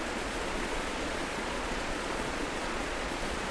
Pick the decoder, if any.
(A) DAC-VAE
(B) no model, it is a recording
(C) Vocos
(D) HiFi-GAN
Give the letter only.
C